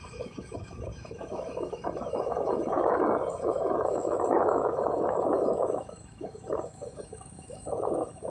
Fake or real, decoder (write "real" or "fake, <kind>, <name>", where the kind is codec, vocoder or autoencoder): fake, autoencoder, DAC-VAE